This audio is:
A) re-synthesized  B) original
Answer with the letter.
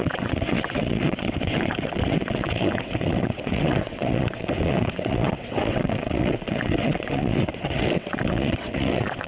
A